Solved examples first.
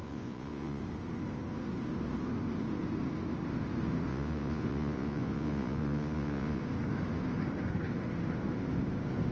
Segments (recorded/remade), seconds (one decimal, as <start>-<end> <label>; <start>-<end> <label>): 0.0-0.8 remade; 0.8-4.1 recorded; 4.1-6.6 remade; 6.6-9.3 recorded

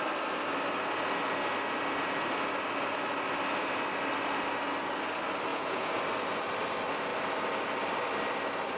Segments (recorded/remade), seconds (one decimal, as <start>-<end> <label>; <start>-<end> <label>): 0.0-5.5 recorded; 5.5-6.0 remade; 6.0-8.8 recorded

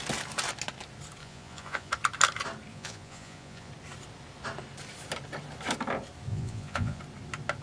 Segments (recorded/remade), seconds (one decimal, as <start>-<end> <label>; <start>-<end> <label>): 0.0-1.2 recorded; 1.2-1.9 remade; 1.9-2.7 recorded; 2.7-3.7 remade; 3.7-6.3 recorded; 6.3-7.0 remade; 7.0-7.6 recorded

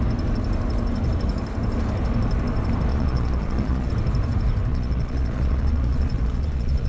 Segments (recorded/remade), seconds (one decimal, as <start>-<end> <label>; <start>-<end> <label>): 0.0-2.9 recorded; 2.9-3.9 remade; 3.9-4.7 recorded; 4.7-6.9 remade

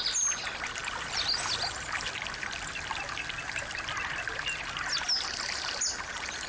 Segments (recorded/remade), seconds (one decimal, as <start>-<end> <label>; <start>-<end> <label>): 0.0-6.5 recorded

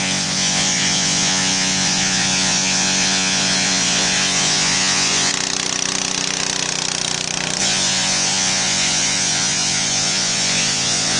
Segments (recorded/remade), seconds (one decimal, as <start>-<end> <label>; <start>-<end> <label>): 0.0-5.3 remade; 5.3-7.6 recorded; 7.6-11.2 remade